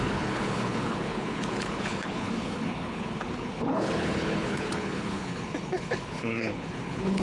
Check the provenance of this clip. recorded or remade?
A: remade